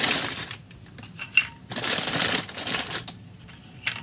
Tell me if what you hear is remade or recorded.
recorded